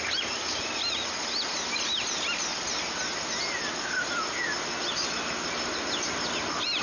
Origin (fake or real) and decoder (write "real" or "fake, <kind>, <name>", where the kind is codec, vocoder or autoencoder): real